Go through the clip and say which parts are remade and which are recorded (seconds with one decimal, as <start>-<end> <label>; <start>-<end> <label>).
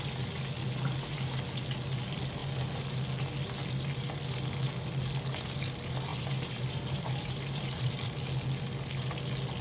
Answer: 0.0-6.1 recorded; 6.1-7.9 remade; 7.9-9.6 recorded